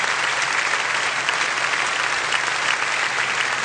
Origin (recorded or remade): recorded